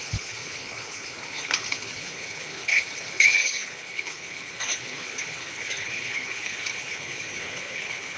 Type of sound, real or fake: fake